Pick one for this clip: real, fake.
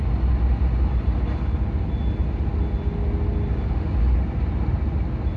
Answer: real